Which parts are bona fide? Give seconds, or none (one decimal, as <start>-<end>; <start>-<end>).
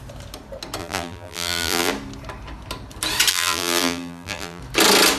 0.0-0.8; 1.9-3.3; 4.6-5.2